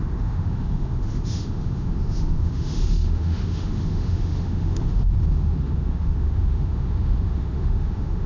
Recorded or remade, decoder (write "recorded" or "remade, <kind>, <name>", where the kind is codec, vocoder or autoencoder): remade, autoencoder, DAC-VAE